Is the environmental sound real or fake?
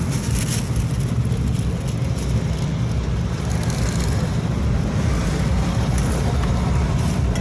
real